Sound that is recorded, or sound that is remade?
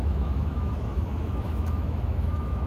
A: remade